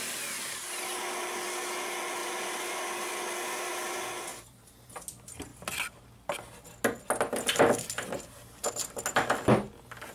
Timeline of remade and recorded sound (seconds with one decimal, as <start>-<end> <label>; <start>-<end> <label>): 0.0-2.2 recorded; 2.2-3.2 remade; 3.2-4.3 recorded; 4.3-4.9 remade; 4.9-10.1 recorded